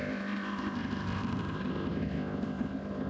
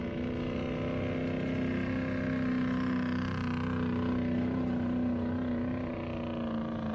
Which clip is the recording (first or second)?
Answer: second